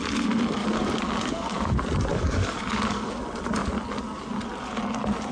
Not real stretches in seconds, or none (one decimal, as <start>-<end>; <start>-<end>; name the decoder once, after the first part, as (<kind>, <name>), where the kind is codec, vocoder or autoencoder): 0.6-1.7 (codec, DAC); 2.1-3.2